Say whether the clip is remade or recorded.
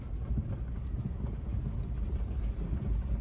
recorded